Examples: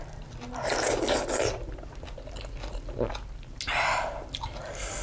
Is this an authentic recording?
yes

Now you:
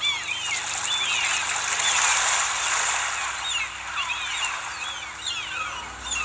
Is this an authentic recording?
yes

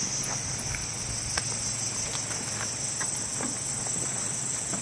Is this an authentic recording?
yes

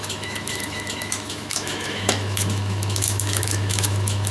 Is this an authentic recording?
no